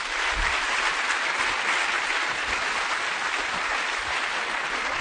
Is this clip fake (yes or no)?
no